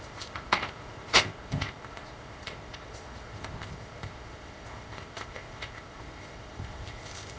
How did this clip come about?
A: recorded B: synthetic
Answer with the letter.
B